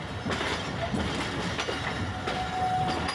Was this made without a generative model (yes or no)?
yes